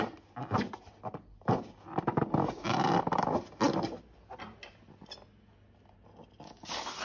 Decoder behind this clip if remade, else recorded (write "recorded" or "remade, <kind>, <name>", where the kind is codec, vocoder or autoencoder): recorded